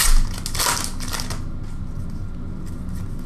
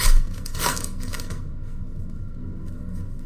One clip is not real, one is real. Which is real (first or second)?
first